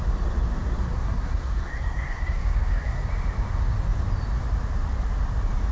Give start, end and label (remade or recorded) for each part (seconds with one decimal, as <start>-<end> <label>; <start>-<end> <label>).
0.0-0.8 recorded; 0.8-3.1 remade; 3.1-5.7 recorded